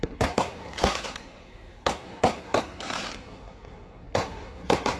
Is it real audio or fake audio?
fake